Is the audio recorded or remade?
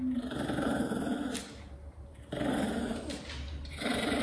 recorded